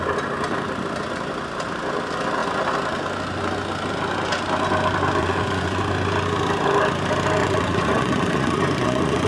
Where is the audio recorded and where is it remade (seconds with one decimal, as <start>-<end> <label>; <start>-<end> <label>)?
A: 0.0-5.2 recorded; 5.2-5.8 remade; 5.8-7.4 recorded; 7.4-9.3 remade